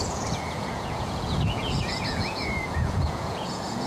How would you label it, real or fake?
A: fake